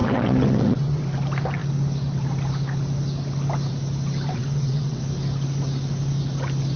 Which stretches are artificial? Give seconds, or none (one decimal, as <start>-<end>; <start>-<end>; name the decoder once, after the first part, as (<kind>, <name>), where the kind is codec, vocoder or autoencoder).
0.0-1.0 (vocoder, WaveNeXt); 4.3-5.0